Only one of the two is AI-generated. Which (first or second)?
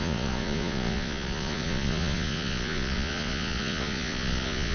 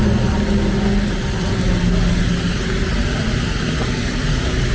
first